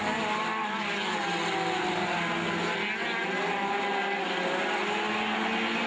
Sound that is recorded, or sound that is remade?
recorded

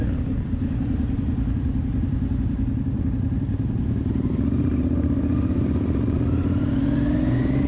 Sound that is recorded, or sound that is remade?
remade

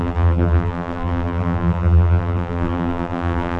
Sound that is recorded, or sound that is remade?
remade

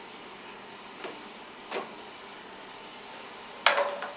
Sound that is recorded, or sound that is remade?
recorded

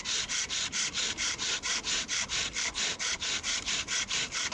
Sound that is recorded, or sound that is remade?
remade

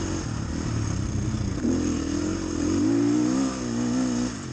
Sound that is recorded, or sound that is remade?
recorded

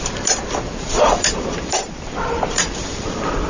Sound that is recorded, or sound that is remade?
remade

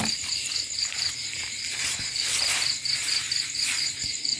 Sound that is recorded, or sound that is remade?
remade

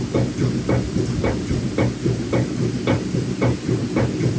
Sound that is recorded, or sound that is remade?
remade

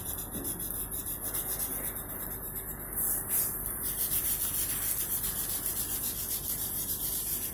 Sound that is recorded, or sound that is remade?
recorded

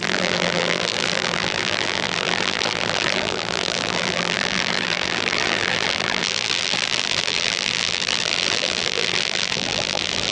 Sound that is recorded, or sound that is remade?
remade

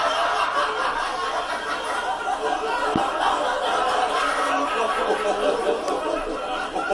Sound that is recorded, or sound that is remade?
recorded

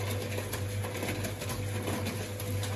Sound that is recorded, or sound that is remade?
recorded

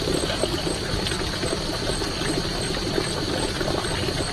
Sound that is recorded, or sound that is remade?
recorded